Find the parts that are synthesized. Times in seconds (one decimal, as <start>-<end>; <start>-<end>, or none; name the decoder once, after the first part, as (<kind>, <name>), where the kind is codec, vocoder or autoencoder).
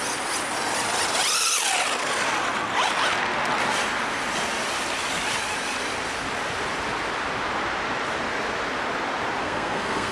9.4-10.1 (codec, SNAC)